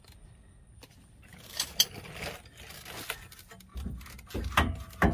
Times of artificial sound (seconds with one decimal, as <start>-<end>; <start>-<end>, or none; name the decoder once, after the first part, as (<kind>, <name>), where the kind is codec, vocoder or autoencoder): none